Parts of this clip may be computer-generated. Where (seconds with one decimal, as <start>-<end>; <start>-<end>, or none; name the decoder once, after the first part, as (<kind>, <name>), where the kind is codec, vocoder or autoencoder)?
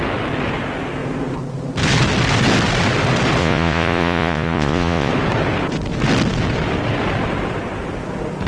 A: 3.4-5.1 (vocoder, Vocos)